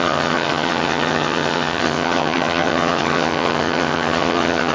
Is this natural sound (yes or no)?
no